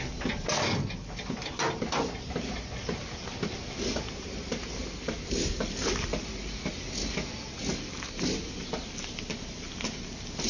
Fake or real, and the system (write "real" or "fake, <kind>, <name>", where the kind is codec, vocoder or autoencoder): real